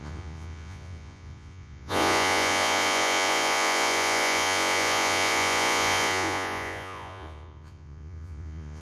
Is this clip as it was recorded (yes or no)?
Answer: no